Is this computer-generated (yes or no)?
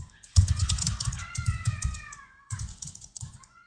yes